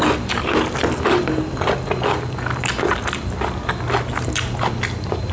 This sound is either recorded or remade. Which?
recorded